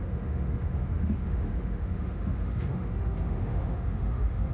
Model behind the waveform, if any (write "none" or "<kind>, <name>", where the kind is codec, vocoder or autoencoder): autoencoder, DAC-VAE